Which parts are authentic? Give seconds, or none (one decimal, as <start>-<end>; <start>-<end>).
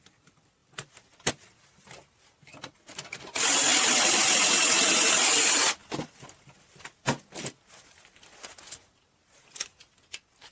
0.0-10.5